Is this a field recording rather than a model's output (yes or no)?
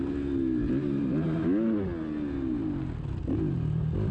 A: yes